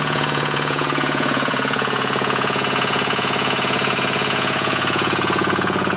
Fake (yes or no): yes